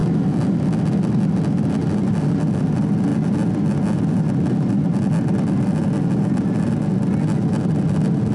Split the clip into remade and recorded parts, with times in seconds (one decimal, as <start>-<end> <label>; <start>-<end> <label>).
0.0-8.3 recorded